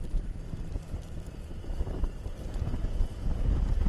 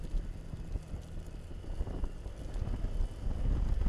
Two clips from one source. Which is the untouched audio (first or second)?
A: second